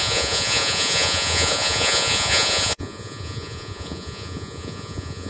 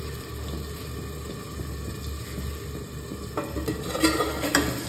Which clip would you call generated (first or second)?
first